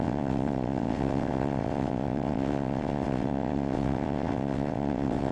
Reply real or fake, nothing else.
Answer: fake